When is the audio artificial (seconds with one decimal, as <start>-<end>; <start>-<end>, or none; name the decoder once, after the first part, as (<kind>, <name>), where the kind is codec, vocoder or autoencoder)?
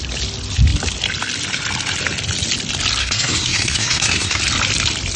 3.0-4.4 (codec, SNAC)